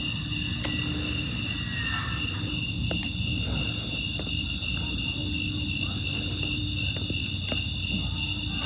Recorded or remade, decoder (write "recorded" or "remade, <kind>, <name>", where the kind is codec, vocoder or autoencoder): recorded